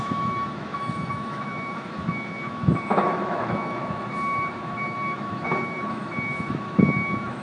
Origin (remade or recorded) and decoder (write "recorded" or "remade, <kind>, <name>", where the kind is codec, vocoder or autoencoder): remade, autoencoder, DAC-VAE